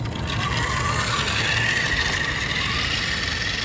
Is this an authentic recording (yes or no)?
yes